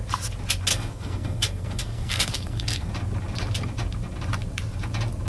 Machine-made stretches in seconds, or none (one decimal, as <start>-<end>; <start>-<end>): 0.7-2.9